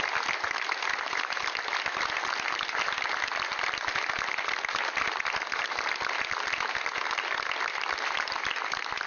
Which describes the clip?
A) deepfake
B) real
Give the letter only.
B